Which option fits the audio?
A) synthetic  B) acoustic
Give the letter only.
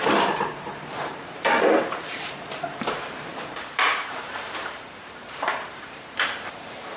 A